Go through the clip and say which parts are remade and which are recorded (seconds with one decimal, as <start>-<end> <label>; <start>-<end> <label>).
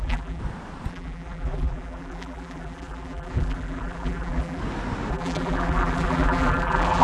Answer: 0.0-0.4 remade; 0.4-0.9 recorded; 0.9-4.6 remade; 4.6-5.1 recorded; 5.1-7.0 remade